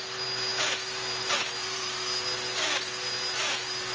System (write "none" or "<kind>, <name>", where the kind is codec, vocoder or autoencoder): none